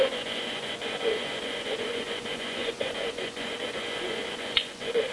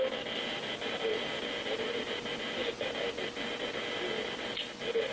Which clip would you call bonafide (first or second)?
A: second